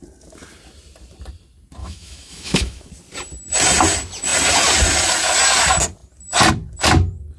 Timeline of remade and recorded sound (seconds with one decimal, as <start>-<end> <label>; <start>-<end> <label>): 0.0-1.8 recorded; 1.8-2.9 remade; 2.9-7.4 recorded